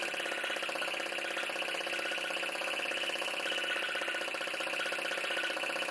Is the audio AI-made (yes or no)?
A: no